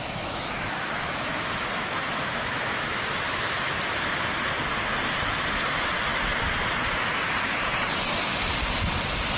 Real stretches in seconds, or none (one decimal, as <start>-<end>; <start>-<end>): 3.7-9.4